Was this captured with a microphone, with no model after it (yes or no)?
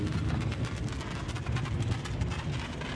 yes